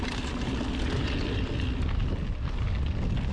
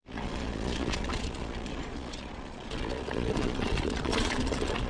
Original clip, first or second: first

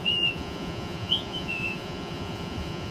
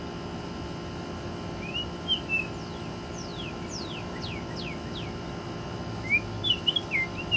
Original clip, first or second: second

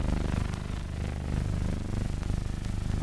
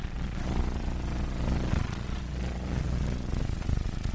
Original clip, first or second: first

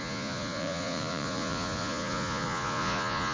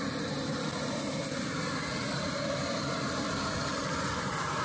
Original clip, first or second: second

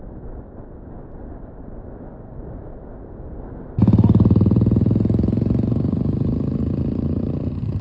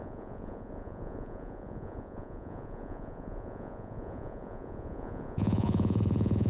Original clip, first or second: first